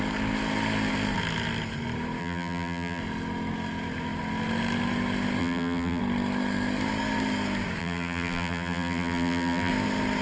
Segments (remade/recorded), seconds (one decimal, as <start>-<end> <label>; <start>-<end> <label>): 0.0-2.2 recorded; 2.2-3.0 remade; 3.0-5.4 recorded; 5.4-6.0 remade; 6.0-7.8 recorded; 7.8-9.7 remade; 9.7-10.2 recorded